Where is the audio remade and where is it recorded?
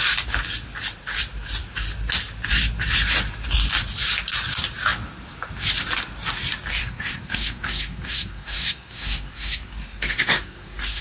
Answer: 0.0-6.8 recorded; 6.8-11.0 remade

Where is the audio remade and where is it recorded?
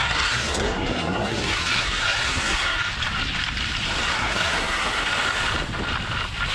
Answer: 0.0-2.9 remade; 2.9-4.1 recorded; 4.1-5.1 remade; 5.1-6.5 recorded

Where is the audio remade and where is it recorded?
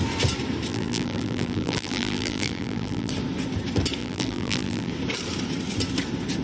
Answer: 0.0-0.7 recorded; 0.7-3.1 remade; 3.1-4.0 recorded; 4.0-4.9 remade; 4.9-6.4 recorded